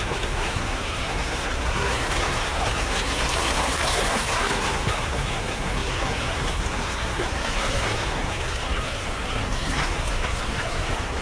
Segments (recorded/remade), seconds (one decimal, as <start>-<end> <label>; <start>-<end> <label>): 0.0-11.2 remade